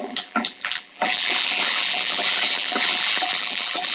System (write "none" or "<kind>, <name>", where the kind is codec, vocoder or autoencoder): vocoder, BigVGAN v2